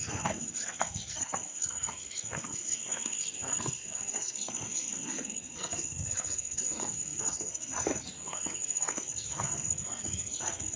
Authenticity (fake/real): fake